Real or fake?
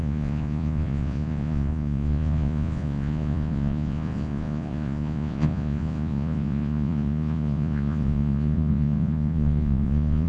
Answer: fake